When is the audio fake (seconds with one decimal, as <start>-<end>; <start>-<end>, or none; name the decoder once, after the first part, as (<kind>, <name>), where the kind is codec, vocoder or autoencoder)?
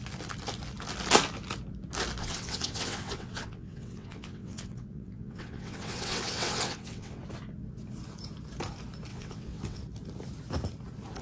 2.2-7.2 (vocoder, WaveNeXt); 9.1-9.8